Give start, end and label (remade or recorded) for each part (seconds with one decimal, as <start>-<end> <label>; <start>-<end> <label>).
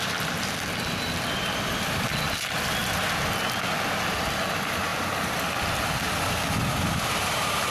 0.0-7.7 recorded